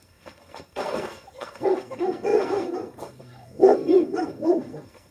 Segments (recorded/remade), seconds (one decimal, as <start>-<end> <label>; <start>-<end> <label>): 0.0-5.1 remade